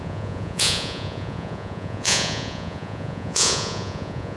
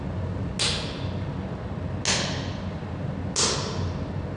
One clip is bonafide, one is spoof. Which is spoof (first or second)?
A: first